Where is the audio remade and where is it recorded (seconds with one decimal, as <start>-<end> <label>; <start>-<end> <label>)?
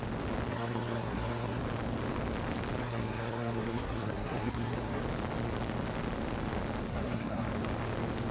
0.0-0.5 recorded; 0.5-1.6 remade; 1.6-2.8 recorded; 2.8-5.0 remade; 5.0-6.9 recorded; 6.9-7.5 remade; 7.5-8.3 recorded